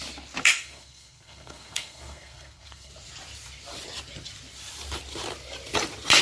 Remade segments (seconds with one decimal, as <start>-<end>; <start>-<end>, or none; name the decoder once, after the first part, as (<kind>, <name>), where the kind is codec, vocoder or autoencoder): 0.5-2.9 (codec, SNAC)